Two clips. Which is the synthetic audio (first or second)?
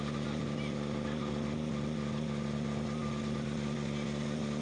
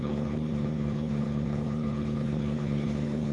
second